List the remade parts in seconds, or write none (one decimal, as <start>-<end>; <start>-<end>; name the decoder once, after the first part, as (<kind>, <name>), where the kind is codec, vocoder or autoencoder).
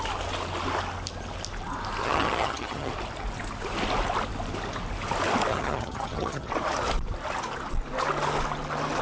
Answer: 2.0-2.9 (vocoder, HiFi-GAN); 5.5-6.5